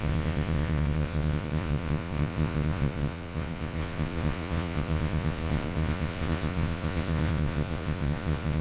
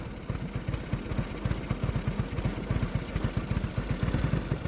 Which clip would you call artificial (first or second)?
first